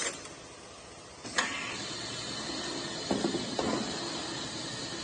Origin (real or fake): real